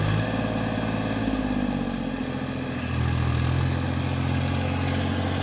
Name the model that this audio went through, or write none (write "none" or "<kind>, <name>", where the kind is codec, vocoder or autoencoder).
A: none